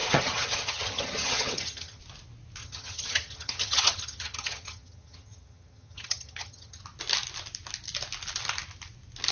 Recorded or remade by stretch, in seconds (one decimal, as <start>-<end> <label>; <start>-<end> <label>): 0.0-2.0 remade; 2.0-2.6 recorded; 2.6-6.8 remade; 6.8-9.3 recorded